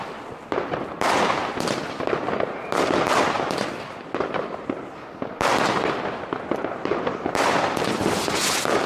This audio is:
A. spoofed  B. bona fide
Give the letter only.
B